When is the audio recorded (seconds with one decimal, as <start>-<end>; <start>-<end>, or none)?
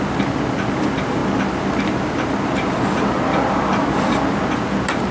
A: 0.0-5.1